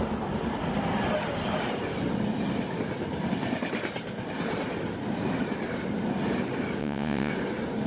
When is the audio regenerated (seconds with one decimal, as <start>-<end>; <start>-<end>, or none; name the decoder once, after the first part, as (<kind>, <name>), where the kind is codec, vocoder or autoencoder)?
6.8-7.3 (vocoder, WaveNeXt)